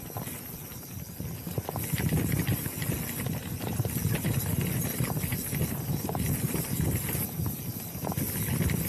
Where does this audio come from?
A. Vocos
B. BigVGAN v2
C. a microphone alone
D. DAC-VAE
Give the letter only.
C